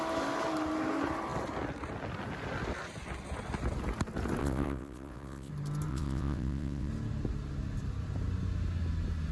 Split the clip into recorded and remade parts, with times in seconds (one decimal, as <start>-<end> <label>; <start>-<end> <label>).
0.0-4.4 recorded; 4.4-5.5 remade; 5.5-5.9 recorded; 5.9-6.9 remade; 6.9-9.3 recorded